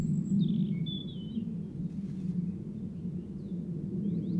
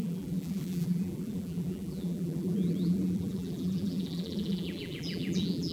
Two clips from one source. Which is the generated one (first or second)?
second